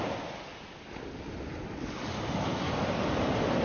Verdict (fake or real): real